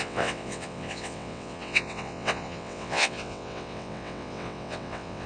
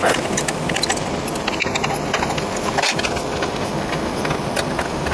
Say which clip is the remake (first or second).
first